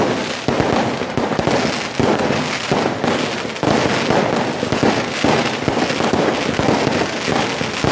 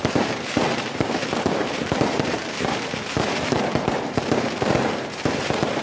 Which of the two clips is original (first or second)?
first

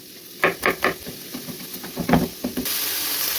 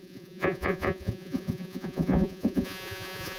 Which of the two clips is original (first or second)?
first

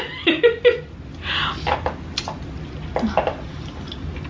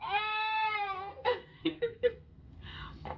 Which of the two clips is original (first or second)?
first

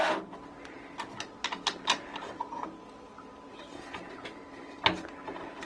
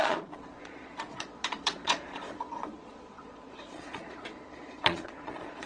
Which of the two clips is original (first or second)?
first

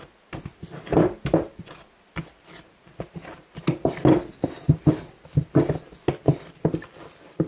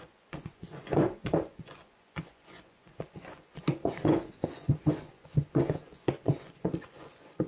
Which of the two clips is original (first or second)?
first